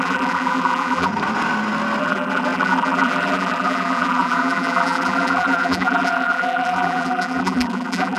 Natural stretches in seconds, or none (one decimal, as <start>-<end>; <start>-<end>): 1.1-2.0